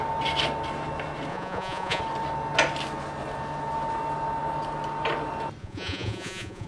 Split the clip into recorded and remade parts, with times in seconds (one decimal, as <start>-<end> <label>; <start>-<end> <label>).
0.0-1.3 recorded; 1.3-2.0 remade; 2.0-5.6 recorded; 5.6-6.7 remade